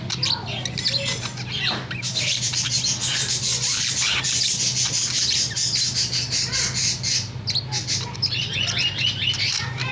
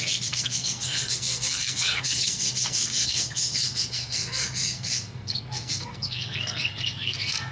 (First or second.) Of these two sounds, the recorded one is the first